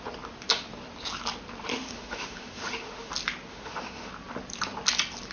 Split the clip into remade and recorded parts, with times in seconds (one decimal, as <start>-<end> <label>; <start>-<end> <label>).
0.0-1.7 recorded; 1.7-3.1 remade; 3.1-3.5 recorded; 3.5-4.1 remade; 4.1-5.3 recorded